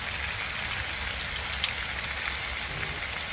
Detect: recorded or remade recorded